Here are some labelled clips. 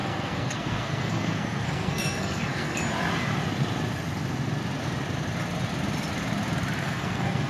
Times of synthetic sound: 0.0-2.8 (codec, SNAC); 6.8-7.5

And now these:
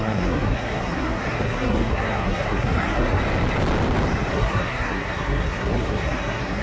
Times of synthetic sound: 0.0-3.2 (codec, SNAC); 4.3-6.6

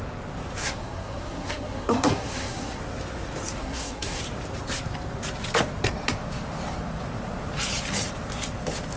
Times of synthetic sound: 0.6-2.8 (codec, SNAC); 3.6-4.2

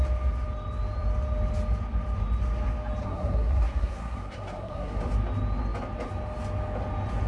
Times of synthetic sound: 3.0-5.0 (codec, SNAC)

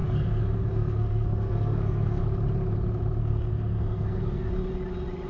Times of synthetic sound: 0.0-2.2 (codec, SNAC); 3.2-4.5

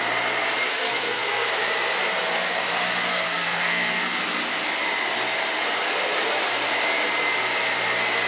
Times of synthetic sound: 0.7-1.5 (codec, SNAC); 3.1-4.2